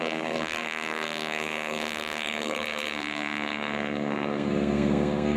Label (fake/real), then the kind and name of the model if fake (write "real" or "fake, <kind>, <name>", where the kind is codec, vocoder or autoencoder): fake, codec, SNAC